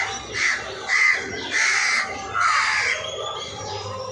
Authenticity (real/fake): real